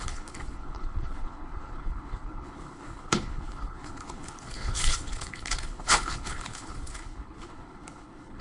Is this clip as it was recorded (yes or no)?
no